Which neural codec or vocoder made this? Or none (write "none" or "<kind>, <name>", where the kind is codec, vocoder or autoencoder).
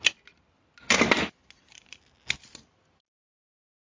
none